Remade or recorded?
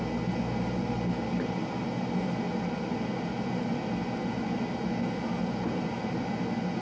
recorded